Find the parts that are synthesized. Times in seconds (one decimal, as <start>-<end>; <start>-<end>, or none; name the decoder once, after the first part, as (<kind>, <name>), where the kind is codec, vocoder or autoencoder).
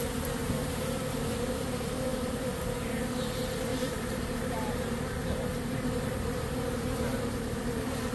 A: 0.4-1.0 (vocoder, BigVGAN v2); 3.7-4.9